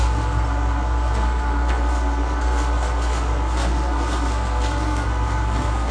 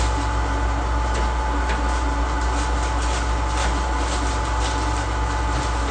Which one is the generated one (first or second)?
first